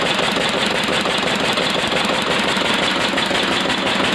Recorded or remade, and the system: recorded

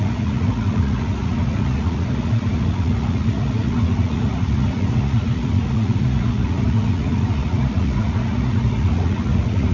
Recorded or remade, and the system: remade, vocoder, Vocos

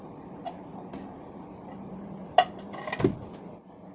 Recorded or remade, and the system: recorded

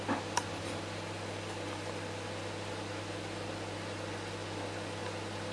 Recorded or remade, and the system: recorded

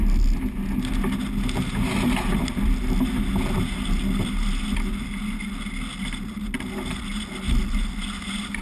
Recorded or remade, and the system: recorded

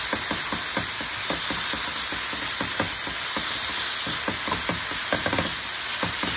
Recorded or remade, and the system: recorded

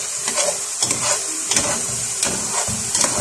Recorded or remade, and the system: recorded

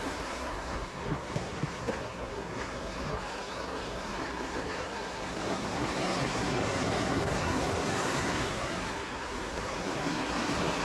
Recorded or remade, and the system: remade, codec, SNAC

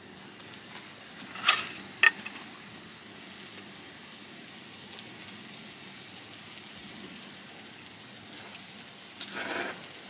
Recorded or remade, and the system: recorded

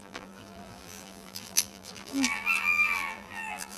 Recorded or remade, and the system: remade, vocoder, BigVGAN v2